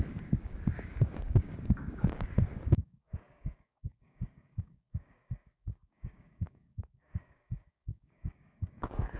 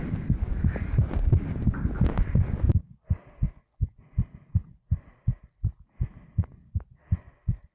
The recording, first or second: second